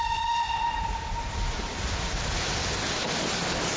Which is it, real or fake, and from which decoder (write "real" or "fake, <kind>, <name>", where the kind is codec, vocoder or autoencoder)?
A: real